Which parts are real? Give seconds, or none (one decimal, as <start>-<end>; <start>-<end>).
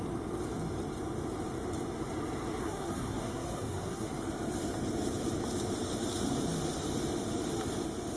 0.0-2.6; 4.1-8.2